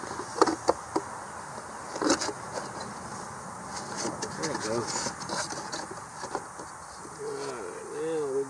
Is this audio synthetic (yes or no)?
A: no